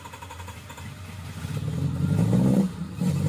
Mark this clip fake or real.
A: real